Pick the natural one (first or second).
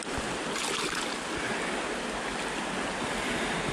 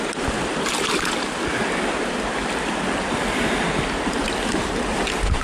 first